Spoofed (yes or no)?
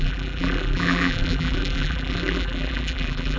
yes